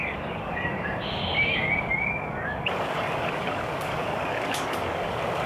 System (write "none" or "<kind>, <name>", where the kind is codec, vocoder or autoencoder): codec, DAC